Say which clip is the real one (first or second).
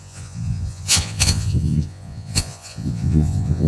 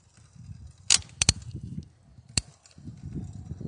second